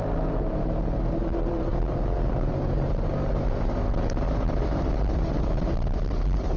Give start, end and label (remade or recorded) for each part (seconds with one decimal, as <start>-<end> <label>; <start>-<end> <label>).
0.0-6.6 remade